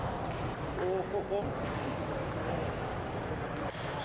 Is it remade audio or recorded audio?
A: recorded